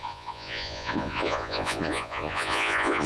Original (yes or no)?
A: no